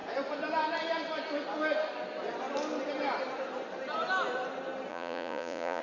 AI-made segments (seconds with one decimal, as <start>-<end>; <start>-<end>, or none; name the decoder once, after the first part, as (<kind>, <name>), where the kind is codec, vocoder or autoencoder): 4.9-5.8 (vocoder, Vocos)